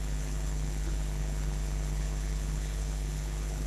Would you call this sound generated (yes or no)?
yes